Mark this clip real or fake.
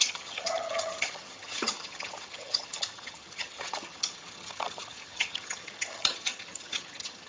fake